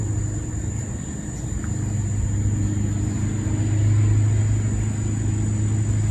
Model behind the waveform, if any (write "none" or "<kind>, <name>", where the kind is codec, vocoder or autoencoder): none